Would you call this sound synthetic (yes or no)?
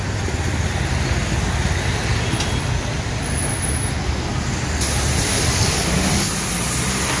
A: no